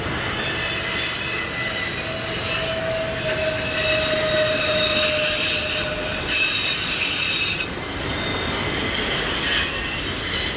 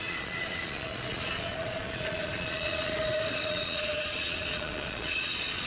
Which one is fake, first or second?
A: second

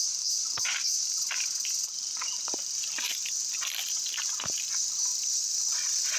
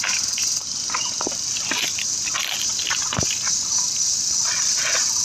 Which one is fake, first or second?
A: first